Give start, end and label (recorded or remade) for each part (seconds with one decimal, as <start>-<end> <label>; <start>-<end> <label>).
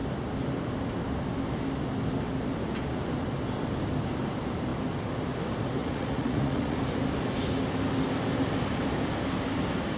0.0-5.8 recorded; 5.8-6.8 remade; 6.8-10.0 recorded